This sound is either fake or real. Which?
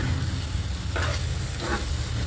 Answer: real